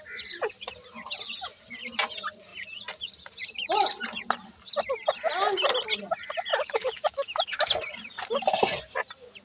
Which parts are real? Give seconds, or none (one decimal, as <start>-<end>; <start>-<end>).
0.0-6.5; 7.7-9.4